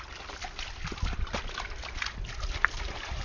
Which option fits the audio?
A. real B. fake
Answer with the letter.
A